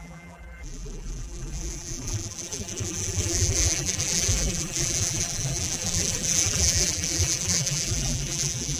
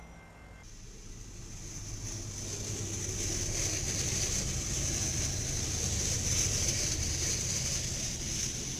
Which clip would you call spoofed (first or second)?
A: first